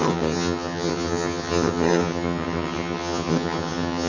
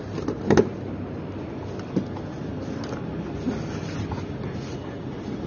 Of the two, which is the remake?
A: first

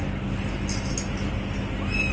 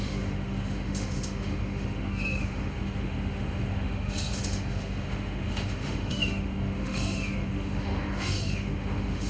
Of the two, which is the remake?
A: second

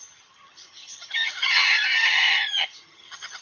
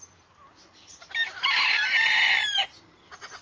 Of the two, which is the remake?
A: first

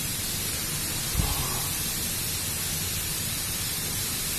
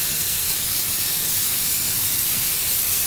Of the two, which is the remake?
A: second